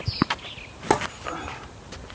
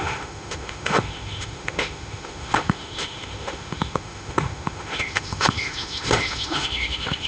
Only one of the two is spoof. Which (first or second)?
second